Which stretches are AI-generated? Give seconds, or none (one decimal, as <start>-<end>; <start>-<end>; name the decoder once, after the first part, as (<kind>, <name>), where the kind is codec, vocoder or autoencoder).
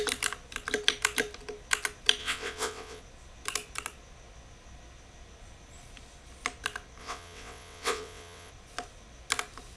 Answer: 2.2-3.0 (vocoder, WaveNeXt); 7.0-8.5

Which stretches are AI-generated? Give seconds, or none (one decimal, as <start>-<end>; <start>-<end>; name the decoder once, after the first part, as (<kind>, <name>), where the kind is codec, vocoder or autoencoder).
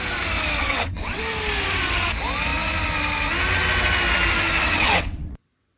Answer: 0.6-1.2 (vocoder, WaveNeXt); 4.6-5.8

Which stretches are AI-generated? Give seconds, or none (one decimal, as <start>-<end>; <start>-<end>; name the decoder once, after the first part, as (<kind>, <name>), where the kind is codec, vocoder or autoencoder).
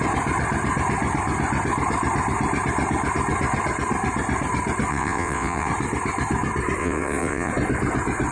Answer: 4.9-5.7 (vocoder, WaveNeXt); 6.8-7.5